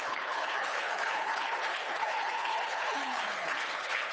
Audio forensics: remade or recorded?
remade